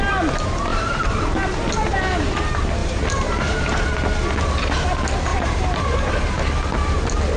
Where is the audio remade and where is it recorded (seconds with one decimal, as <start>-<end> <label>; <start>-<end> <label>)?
0.0-0.7 recorded; 0.7-1.2 remade; 1.2-2.8 recorded; 2.8-3.8 remade; 3.8-5.3 recorded; 5.3-6.1 remade; 6.1-7.4 recorded